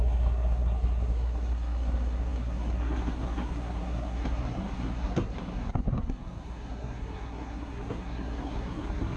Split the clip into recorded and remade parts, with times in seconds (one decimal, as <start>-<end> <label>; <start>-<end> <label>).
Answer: 0.0-9.2 remade